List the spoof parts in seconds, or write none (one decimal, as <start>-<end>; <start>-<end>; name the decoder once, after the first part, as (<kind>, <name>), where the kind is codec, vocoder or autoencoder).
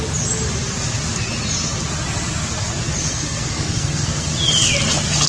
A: 3.0-4.3 (codec, SNAC)